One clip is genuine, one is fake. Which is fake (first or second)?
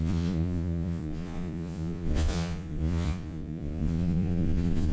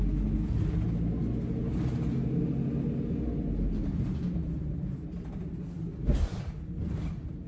first